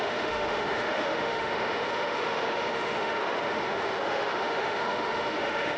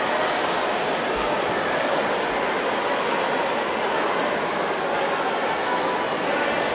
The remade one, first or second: first